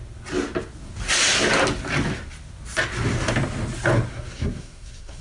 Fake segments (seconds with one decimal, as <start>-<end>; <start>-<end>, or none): 4.1-5.2